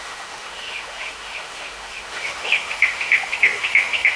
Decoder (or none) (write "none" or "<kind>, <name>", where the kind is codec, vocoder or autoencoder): autoencoder, DAC-VAE